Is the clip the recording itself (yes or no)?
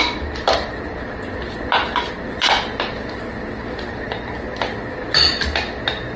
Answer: yes